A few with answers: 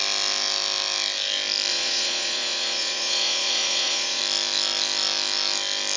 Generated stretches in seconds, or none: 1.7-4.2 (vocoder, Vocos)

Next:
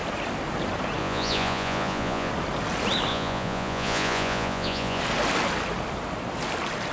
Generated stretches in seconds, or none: 1.0-2.3 (vocoder, Vocos); 3.1-5.0

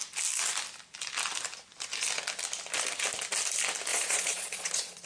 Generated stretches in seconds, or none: 3.9-5.1 (vocoder, Vocos)

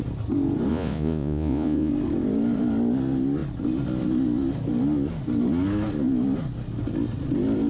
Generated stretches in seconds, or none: 0.7-1.9 (vocoder, Vocos)

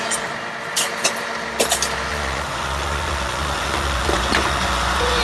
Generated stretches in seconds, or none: 2.1-5.2 (vocoder, Vocos)

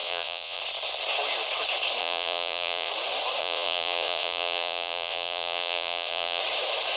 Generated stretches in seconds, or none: 0.0-0.6 (vocoder, Vocos); 2.0-2.9; 3.4-6.4

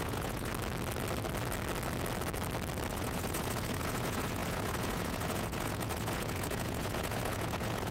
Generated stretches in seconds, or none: 0.0-0.5 (vocoder, Vocos); 2.9-7.9

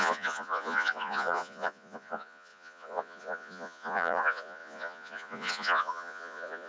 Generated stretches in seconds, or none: 0.0-6.7 (vocoder, Vocos)